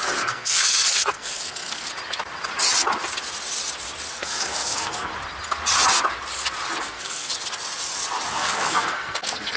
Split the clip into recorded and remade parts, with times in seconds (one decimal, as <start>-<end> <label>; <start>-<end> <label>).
0.0-1.9 remade; 1.9-4.1 recorded; 4.1-5.1 remade; 5.1-6.8 recorded; 6.8-7.3 remade; 7.3-8.3 recorded; 8.3-9.6 remade